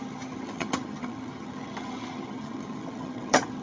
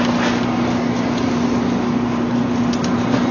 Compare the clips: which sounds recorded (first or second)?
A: second